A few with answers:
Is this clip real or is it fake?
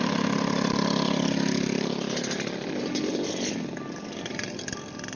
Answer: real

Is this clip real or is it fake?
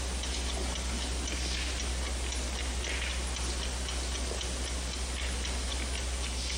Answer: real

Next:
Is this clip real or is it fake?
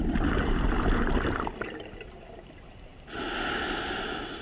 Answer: real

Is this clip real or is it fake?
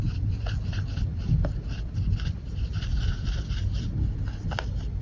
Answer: real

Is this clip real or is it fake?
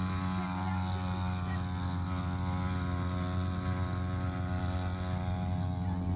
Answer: real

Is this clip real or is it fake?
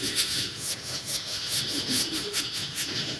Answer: fake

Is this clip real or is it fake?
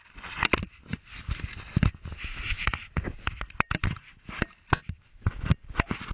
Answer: real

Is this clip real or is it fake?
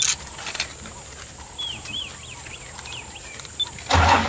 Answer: real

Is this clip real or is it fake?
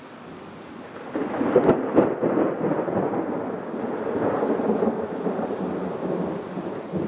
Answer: real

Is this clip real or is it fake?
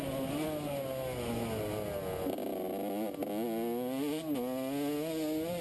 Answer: real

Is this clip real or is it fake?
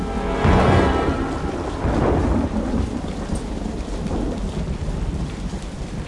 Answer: real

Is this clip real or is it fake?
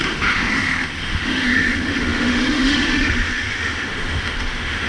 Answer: fake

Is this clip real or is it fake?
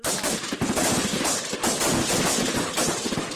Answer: real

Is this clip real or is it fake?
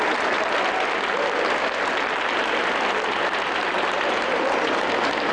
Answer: real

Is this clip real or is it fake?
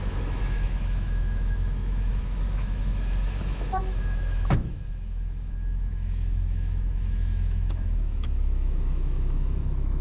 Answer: fake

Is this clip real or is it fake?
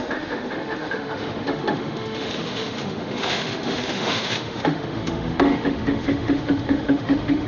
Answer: fake